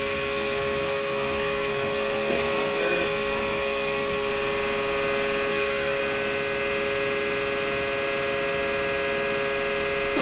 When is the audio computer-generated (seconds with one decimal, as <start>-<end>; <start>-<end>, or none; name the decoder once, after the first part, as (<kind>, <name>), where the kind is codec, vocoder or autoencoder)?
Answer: 0.0-4.3 (codec, SNAC); 5.5-6.0